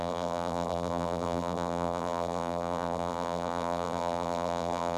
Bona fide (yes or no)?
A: no